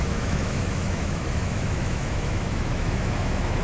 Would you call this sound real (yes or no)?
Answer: no